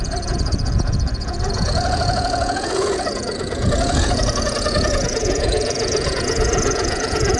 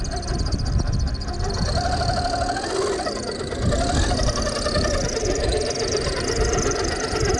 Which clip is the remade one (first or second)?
first